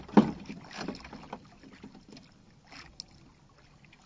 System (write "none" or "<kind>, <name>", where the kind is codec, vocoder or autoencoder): none